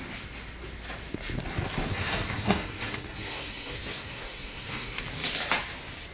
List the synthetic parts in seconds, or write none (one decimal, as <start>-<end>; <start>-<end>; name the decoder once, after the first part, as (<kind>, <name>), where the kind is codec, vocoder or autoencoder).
1.9-5.0 (codec, SNAC)